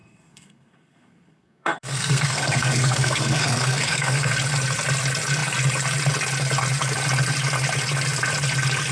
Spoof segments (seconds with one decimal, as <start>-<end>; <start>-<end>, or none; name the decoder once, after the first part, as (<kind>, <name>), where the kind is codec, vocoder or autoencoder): 0.0-4.3 (codec, SNAC)